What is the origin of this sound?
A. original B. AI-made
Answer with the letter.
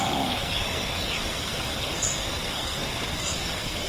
B